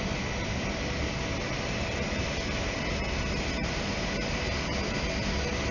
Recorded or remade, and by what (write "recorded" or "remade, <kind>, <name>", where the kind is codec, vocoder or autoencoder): recorded